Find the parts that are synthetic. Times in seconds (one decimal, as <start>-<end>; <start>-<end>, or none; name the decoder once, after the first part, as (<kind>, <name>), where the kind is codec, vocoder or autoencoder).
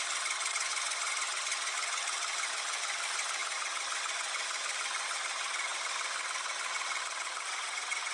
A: none